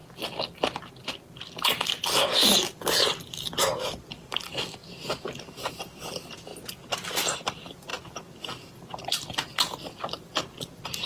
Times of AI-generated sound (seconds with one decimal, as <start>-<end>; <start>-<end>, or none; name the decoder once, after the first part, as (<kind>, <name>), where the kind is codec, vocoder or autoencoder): 4.3-6.5 (vocoder, BigVGAN v2); 7.5-7.9; 8.7-11.1